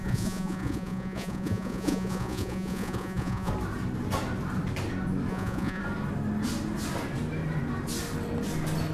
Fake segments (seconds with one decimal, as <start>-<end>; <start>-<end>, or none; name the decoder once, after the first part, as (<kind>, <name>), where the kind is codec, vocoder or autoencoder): 0.0-3.5 (vocoder, Vocos); 5.3-5.8